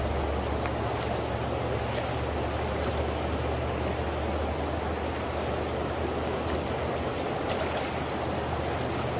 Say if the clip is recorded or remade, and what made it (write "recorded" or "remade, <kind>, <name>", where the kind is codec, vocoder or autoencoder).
recorded